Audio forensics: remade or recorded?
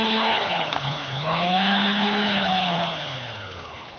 remade